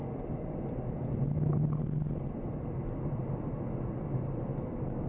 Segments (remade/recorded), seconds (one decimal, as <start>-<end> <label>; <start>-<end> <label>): 0.0-5.1 recorded